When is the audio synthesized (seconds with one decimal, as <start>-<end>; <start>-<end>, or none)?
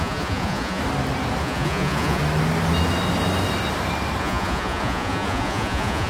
0.0-0.8; 1.4-2.2; 4.2-6.1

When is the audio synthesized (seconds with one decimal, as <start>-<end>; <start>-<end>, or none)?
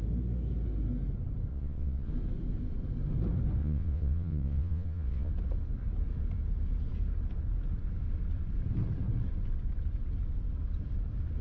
1.5-2.1; 3.6-5.3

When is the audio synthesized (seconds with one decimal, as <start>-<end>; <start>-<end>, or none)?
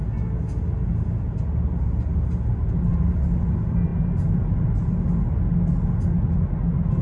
none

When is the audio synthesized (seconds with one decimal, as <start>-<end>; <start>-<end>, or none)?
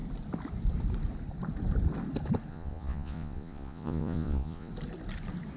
2.5-4.7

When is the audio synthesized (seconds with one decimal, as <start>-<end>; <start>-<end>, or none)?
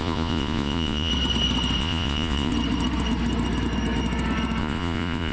0.0-1.1; 1.8-2.5; 4.6-5.3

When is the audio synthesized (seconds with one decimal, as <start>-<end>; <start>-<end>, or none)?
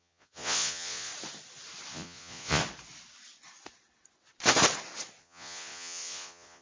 0.0-1.1; 1.9-2.6; 5.2-6.6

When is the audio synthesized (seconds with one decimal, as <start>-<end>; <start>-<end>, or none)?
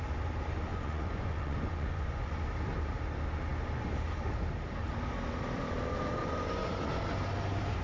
0.7-2.5; 6.2-6.7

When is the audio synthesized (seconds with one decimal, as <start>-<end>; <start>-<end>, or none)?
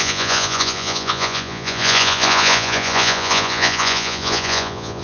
0.0-5.0